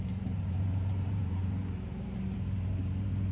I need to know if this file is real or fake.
fake